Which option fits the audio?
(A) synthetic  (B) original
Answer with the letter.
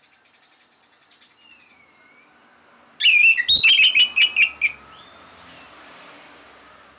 B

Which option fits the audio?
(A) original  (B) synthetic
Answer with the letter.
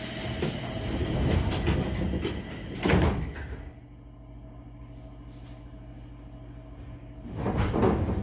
A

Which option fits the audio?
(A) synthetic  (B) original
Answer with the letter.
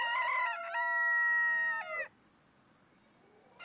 B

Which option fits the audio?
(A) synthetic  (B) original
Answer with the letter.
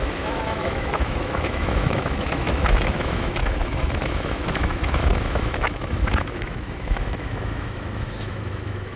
A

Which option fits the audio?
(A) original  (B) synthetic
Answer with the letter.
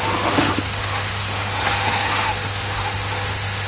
B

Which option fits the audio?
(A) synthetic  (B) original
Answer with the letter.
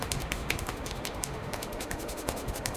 A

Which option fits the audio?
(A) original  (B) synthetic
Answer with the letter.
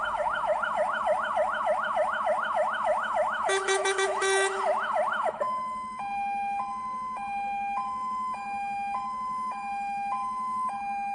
B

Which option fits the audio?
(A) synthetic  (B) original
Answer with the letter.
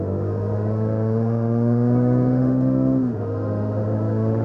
A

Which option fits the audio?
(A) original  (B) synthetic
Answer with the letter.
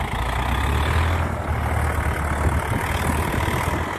A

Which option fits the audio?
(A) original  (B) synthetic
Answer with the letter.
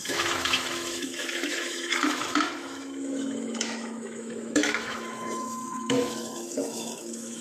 B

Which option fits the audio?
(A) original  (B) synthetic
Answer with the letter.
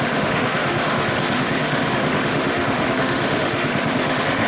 B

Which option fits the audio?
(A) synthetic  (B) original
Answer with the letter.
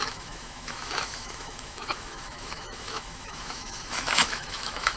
A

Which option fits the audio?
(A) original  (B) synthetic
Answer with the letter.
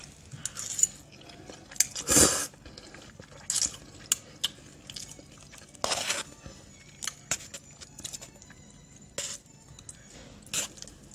A